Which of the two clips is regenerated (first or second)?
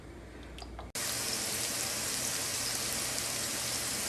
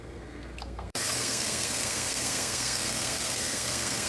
second